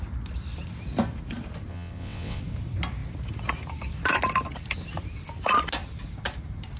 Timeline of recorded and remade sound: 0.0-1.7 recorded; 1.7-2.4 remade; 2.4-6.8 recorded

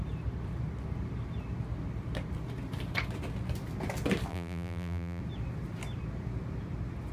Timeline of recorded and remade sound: 0.0-4.3 recorded; 4.3-5.2 remade; 5.2-7.1 recorded

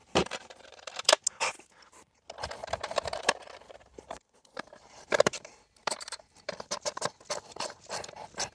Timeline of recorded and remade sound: 0.0-1.1 remade; 1.1-2.6 recorded; 2.6-7.0 remade; 7.0-8.5 recorded

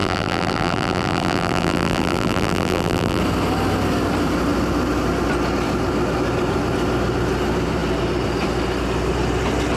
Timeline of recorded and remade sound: 0.0-3.2 remade; 3.2-9.8 recorded

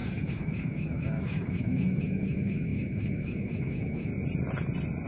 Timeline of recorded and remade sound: 0.0-4.1 remade; 4.1-5.1 recorded

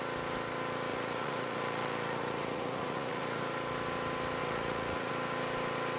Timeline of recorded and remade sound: 0.0-0.9 recorded; 0.9-3.4 remade; 3.4-4.4 recorded; 4.4-5.1 remade; 5.1-6.0 recorded